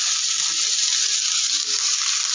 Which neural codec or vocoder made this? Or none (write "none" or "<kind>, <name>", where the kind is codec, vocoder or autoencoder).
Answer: none